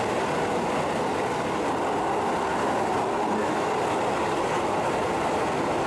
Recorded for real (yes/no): yes